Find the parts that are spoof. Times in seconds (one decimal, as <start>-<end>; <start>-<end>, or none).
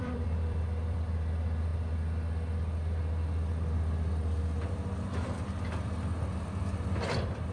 0.0-1.7; 4.7-7.5